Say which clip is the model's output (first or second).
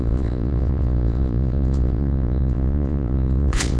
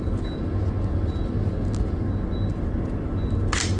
first